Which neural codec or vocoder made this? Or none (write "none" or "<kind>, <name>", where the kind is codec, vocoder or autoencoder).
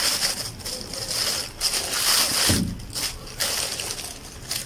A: none